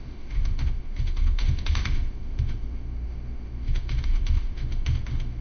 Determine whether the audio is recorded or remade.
remade